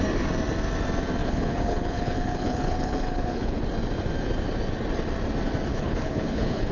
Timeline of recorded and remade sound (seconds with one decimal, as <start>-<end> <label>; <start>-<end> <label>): 0.0-1.2 recorded; 1.2-3.6 remade; 3.6-5.7 recorded; 5.7-6.7 remade